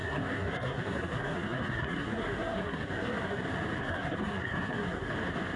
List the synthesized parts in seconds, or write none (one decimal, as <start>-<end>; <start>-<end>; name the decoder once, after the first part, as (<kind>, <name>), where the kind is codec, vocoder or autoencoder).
0.0-3.4 (codec, SNAC); 3.8-5.1